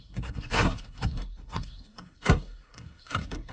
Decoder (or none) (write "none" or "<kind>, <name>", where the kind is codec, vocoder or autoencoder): codec, SNAC